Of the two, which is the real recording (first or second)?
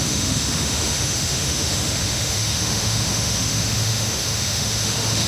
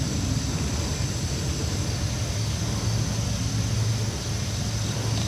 second